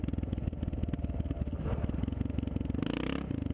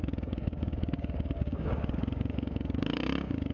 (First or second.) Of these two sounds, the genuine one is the first